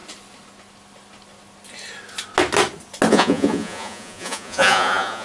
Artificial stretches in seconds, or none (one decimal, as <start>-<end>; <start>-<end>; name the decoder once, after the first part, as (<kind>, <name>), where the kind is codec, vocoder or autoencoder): 3.1-5.2 (vocoder, Vocos)